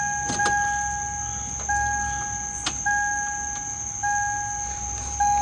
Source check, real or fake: real